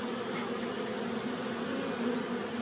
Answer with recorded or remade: recorded